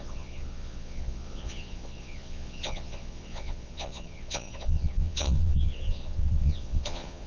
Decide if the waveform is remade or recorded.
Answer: remade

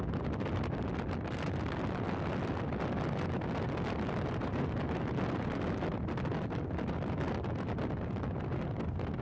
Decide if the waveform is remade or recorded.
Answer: recorded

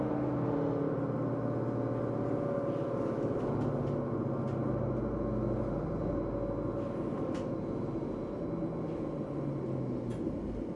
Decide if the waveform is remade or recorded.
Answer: recorded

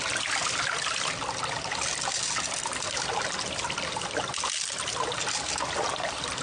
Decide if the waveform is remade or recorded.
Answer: recorded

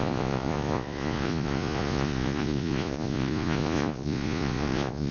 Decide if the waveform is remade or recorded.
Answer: remade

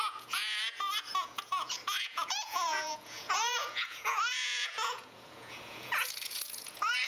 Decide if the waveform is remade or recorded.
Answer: remade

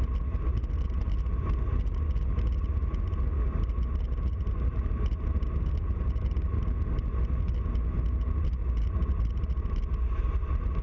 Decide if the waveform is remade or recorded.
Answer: recorded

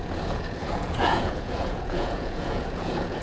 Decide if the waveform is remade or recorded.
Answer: remade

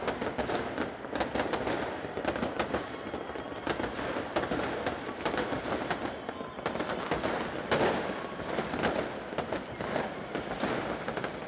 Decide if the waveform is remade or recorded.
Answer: recorded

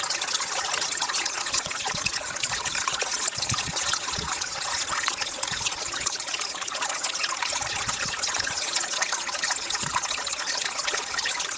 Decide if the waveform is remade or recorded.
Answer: remade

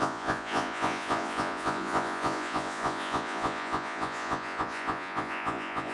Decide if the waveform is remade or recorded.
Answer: remade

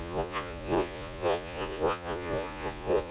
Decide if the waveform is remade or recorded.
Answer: remade